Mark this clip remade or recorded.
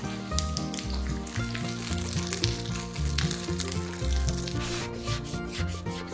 recorded